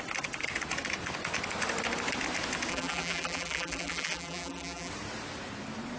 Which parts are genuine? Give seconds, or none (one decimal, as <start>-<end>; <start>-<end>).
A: 0.0-2.7; 4.9-6.0